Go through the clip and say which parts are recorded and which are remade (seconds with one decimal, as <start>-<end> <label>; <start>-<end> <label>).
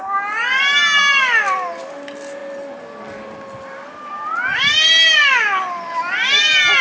0.0-6.8 recorded